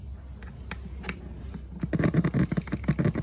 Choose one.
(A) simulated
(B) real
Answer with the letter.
B